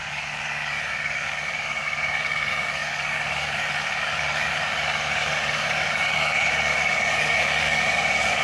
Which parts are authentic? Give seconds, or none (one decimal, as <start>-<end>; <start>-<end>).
none